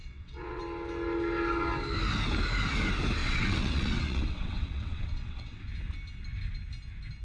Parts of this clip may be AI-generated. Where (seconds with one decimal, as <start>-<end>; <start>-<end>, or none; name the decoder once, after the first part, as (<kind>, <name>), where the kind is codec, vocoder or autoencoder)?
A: 0.0-0.6 (vocoder, WaveNeXt); 3.2-5.7